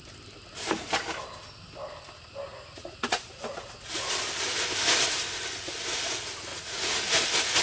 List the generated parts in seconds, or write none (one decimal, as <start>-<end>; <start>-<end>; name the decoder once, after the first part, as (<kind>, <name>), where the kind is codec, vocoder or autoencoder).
2.5-4.1 (vocoder, Vocos); 6.5-7.0